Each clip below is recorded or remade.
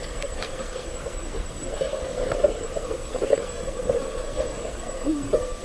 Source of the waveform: remade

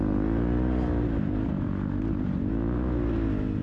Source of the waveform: recorded